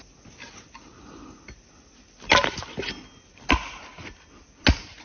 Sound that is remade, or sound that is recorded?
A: recorded